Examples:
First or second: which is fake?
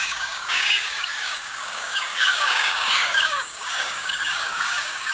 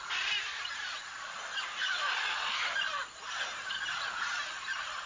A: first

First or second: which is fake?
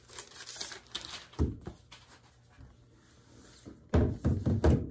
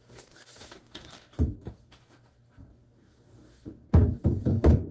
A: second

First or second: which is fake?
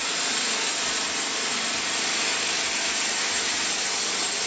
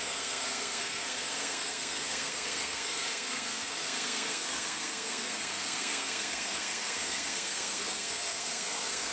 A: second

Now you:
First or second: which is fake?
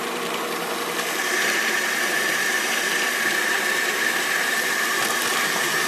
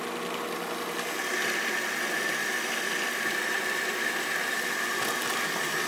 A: first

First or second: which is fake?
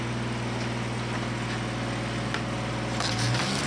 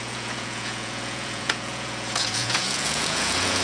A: second